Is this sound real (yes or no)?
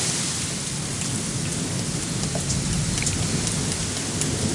yes